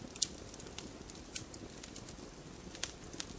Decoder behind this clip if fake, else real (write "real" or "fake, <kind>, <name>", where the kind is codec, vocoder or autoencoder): real